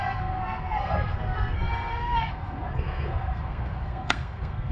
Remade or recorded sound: remade